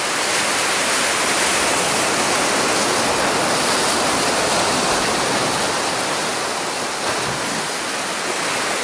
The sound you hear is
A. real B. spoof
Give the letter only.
A